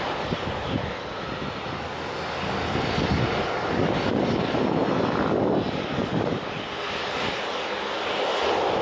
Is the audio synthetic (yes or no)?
no